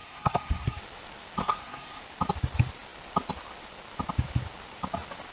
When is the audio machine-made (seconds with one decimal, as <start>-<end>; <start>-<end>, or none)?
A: 0.0-0.8; 1.4-2.0